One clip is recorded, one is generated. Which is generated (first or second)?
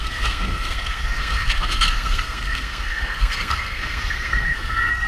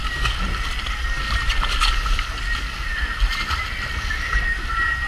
first